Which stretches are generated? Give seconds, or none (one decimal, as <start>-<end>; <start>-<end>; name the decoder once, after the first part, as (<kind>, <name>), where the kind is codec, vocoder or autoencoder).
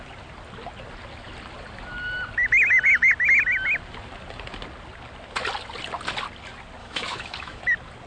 6.8-7.6 (autoencoder, DAC-VAE)